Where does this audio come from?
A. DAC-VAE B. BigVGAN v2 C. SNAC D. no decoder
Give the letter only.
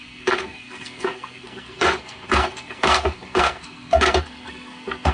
C